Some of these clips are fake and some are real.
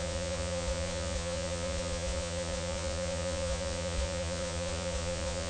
fake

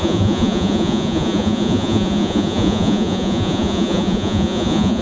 fake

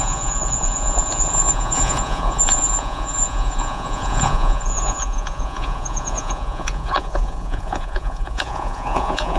fake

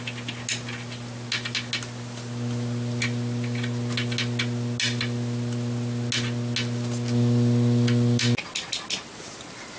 real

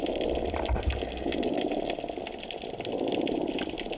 real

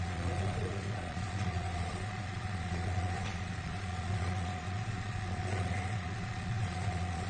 fake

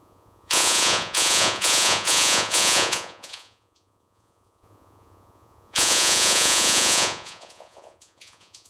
fake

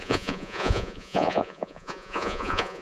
fake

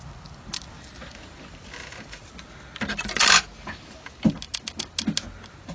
real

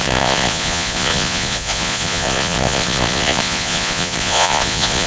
fake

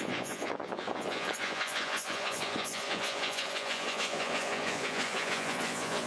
fake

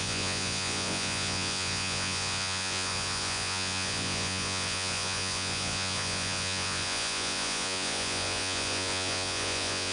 fake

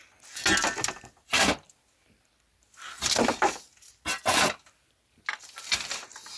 real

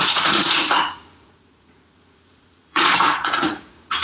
fake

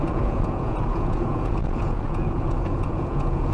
fake